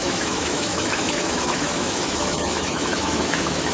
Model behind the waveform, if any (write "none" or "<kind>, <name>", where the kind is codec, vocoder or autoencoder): autoencoder, DAC-VAE